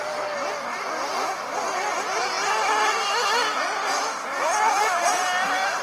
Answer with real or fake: real